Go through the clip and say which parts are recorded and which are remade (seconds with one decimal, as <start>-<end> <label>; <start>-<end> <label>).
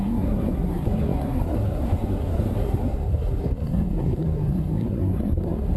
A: 0.0-5.8 remade